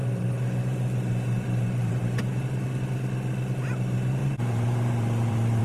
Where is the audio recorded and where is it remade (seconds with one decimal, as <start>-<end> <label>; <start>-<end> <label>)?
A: 0.0-2.2 remade; 2.2-4.2 recorded; 4.2-5.6 remade